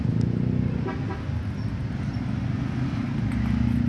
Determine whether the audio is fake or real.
real